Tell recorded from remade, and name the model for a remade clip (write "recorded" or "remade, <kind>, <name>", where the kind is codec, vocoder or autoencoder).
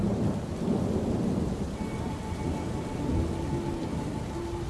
recorded